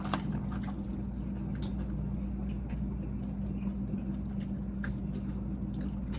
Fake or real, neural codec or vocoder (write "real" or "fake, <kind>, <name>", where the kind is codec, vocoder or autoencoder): real